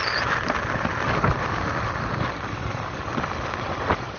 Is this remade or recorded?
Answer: recorded